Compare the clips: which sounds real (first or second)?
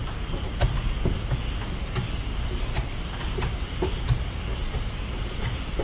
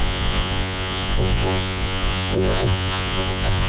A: first